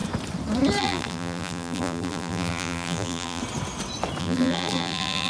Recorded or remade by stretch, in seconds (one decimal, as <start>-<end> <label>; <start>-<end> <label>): 0.0-0.8 recorded; 0.8-3.4 remade; 3.4-4.2 recorded; 4.2-5.3 remade